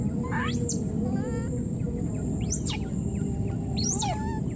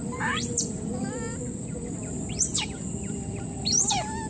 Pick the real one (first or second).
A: first